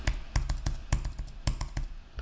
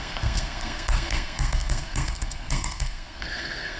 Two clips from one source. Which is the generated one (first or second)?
second